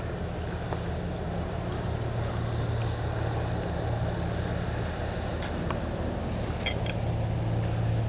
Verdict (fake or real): real